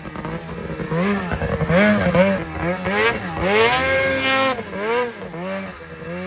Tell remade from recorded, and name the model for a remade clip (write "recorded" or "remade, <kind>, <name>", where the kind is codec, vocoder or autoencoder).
recorded